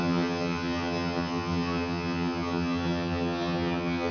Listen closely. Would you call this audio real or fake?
fake